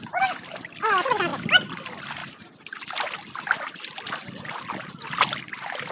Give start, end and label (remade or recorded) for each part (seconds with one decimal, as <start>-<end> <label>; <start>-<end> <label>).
0.0-5.9 recorded